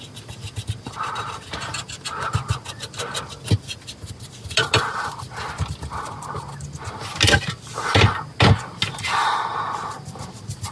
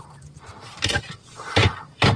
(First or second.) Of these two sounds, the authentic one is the first